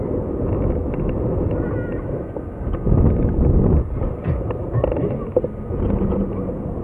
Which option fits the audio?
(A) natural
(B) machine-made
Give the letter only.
A